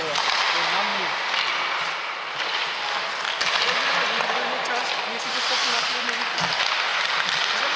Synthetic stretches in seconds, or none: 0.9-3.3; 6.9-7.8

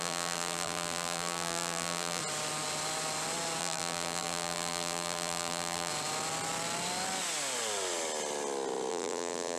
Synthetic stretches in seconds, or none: 0.0-2.2; 3.6-5.9; 8.9-9.6

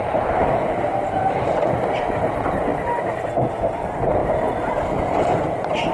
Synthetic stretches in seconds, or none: 0.0-2.7; 3.5-5.9

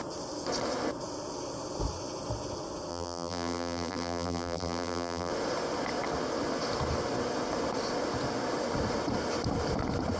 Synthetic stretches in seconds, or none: 2.9-5.3

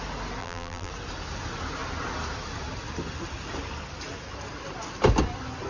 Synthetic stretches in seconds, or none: 0.4-0.9

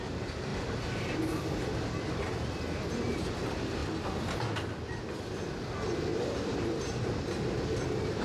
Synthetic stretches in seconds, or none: 6.1-7.1

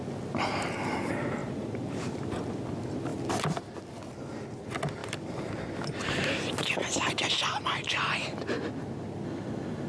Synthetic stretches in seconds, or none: 1.4-2.4; 5.0-5.5; 6.8-8.1